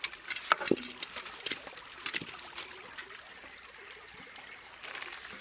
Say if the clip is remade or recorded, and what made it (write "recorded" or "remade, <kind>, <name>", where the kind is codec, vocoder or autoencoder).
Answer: recorded